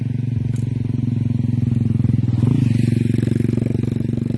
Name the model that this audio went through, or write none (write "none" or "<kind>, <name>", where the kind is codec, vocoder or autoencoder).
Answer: none